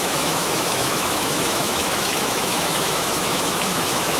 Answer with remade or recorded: remade